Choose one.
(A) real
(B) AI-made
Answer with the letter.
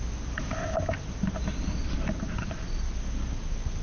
A